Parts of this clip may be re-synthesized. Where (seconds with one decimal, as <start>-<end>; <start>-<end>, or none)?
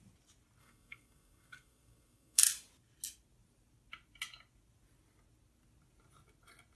0.6-2.4